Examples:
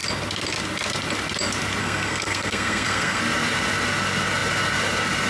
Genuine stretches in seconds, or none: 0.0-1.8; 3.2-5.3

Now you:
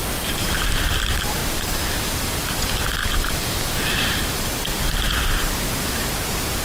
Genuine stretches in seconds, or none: 0.7-1.4; 2.0-3.0; 5.0-6.6

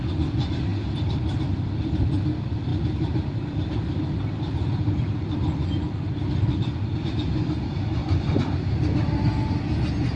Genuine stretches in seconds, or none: 0.0-8.0; 9.2-10.2

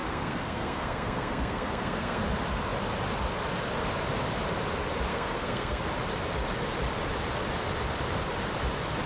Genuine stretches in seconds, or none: 2.2-5.1; 5.8-9.1

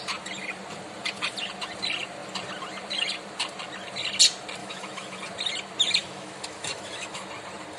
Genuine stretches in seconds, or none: 0.0-4.6; 5.2-6.0; 7.2-7.8

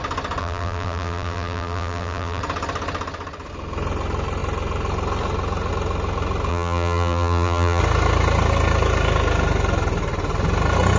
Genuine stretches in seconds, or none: 0.0-0.4; 2.4-6.5; 7.8-11.0

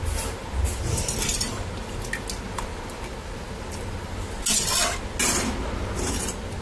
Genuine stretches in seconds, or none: 0.0-2.7; 3.9-6.6